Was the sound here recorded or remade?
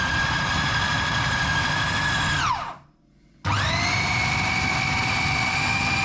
recorded